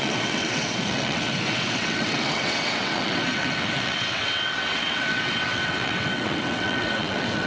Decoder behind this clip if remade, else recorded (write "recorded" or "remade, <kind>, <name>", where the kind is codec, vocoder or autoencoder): remade, vocoder, WaveNeXt